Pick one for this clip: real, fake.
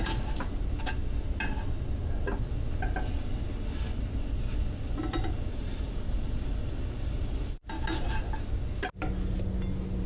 real